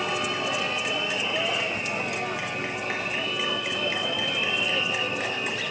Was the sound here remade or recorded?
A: recorded